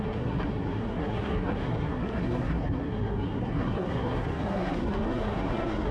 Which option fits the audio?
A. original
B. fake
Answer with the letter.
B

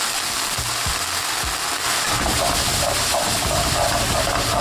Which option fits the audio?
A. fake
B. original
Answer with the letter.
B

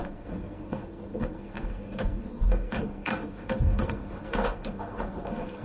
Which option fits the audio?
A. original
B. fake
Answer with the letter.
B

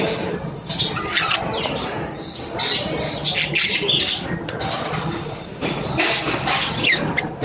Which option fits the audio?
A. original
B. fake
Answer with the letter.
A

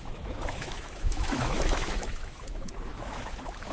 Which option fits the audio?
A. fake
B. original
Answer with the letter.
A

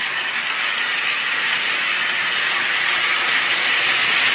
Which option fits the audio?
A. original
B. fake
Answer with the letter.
A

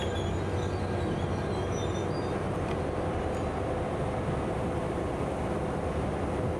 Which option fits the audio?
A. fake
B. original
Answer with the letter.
B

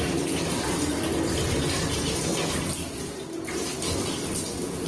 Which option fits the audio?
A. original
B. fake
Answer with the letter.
A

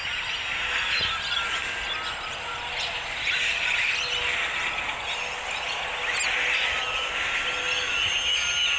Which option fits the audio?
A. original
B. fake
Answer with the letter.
A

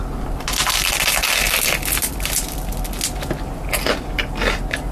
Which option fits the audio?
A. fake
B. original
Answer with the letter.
B